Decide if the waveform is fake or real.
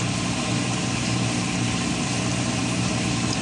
fake